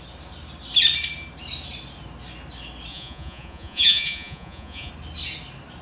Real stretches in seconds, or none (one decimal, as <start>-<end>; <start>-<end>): 0.0-2.9; 4.9-5.8